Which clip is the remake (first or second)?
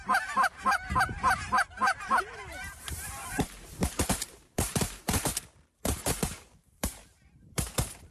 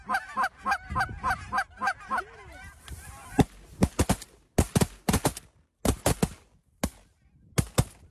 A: first